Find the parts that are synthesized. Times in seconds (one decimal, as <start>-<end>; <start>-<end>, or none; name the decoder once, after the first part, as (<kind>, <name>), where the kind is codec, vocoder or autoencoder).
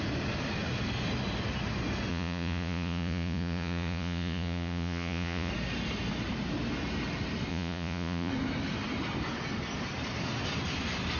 2.1-5.5 (vocoder, Vocos); 7.5-8.3